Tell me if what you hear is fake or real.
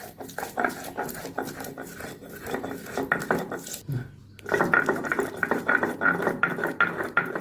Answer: real